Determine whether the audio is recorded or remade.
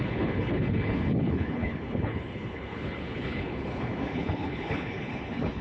remade